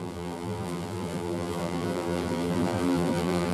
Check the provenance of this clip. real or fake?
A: fake